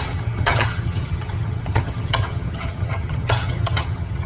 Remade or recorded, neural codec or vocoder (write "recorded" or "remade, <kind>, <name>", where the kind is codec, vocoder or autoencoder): remade, vocoder, HiFi-GAN